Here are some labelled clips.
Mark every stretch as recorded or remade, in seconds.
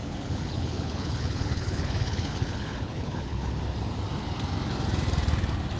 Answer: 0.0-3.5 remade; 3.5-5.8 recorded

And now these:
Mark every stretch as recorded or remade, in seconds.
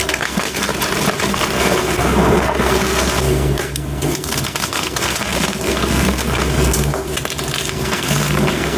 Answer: 0.0-0.7 remade; 0.7-1.3 recorded; 1.3-7.1 remade; 7.1-7.7 recorded; 7.7-8.8 remade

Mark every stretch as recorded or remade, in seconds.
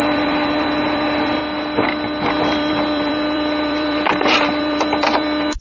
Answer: 0.0-1.4 remade; 1.4-2.3 recorded; 2.3-5.6 remade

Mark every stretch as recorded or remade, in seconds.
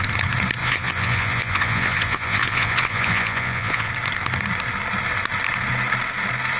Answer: 0.0-0.6 recorded; 0.6-3.9 remade; 3.9-6.6 recorded